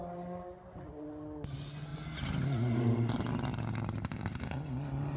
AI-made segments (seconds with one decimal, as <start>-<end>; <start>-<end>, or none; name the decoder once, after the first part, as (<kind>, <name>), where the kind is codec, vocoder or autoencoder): none